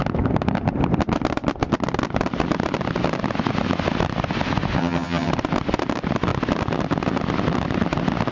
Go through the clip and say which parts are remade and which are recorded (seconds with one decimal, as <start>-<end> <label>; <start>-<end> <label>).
0.0-4.8 recorded; 4.8-5.3 remade; 5.3-8.3 recorded